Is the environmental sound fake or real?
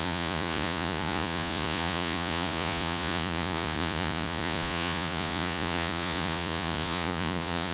fake